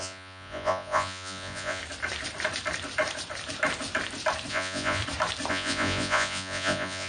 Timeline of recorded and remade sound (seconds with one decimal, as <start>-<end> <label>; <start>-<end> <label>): 0.0-1.8 remade; 1.8-4.5 recorded; 4.5-5.0 remade; 5.0-5.5 recorded; 5.5-7.1 remade

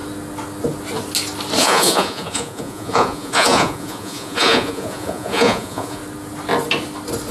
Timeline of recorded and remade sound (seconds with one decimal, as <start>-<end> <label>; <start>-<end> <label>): 0.0-1.6 recorded; 1.6-6.0 remade; 6.0-7.3 recorded

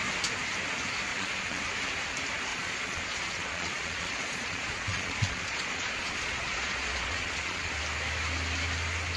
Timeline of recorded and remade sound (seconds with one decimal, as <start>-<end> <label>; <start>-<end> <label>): 0.0-1.1 recorded; 1.1-1.6 remade; 1.6-2.5 recorded; 2.5-7.7 remade; 7.7-9.2 recorded

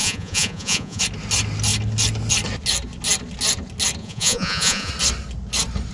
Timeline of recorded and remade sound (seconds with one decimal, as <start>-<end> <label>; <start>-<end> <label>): 0.0-1.0 remade; 1.0-4.0 recorded; 4.0-4.9 remade; 4.9-5.9 recorded

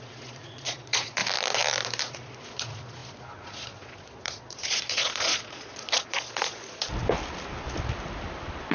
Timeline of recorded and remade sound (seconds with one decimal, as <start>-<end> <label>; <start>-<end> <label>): 0.0-1.2 remade; 1.2-2.1 recorded; 2.1-6.9 remade; 6.9-8.7 recorded

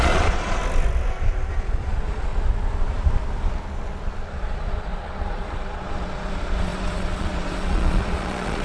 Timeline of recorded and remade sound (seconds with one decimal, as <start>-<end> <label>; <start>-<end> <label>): 0.0-0.6 remade; 0.6-1.5 recorded; 1.5-2.3 remade; 2.3-4.3 recorded; 4.3-8.6 remade

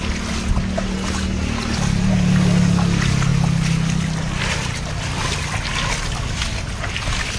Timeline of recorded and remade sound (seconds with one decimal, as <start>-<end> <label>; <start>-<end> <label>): 0.0-7.4 recorded